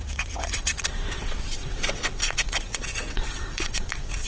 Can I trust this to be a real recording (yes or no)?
no